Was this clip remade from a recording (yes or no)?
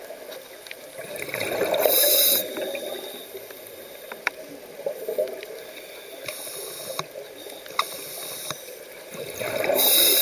no